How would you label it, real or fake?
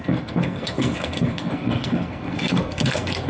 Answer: fake